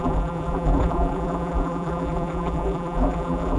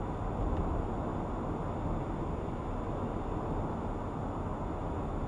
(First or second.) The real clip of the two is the second